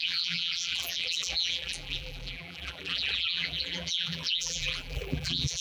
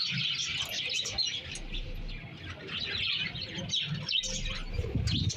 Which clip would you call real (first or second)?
second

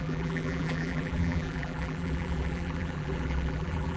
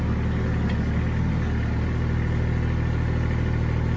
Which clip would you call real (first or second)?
second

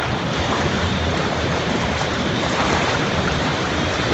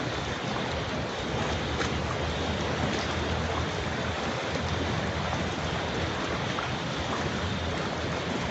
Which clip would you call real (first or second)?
second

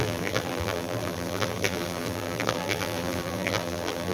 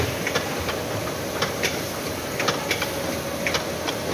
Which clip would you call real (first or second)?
second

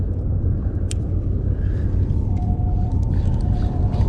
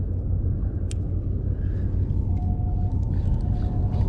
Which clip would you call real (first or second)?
second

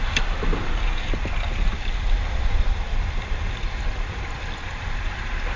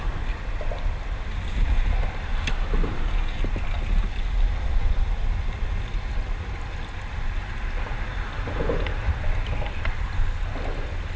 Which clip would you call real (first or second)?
second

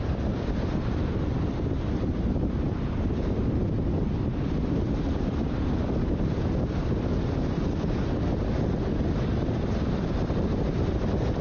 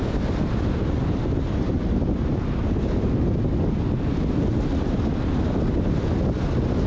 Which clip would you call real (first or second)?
second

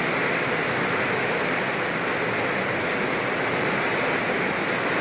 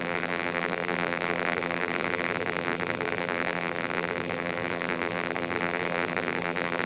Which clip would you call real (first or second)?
first